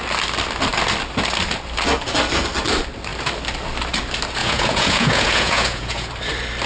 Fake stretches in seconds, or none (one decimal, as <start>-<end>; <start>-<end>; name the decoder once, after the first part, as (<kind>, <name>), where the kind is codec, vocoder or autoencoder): 4.4-6.1 (vocoder, Vocos)